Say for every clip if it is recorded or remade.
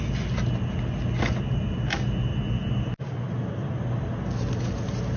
recorded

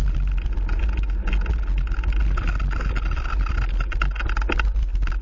recorded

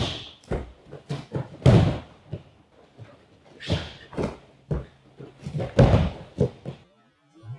recorded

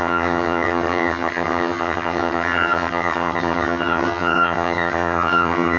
remade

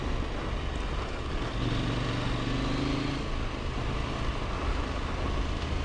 recorded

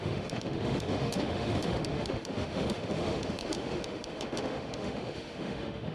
remade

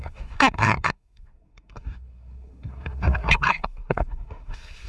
remade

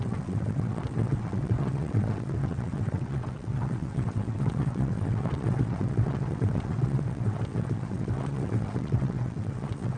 remade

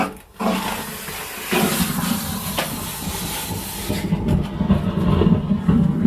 recorded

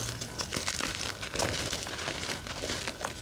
recorded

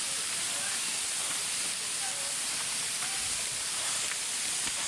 recorded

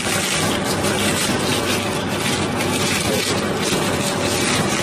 recorded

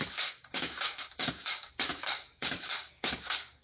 remade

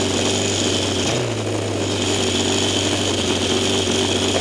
recorded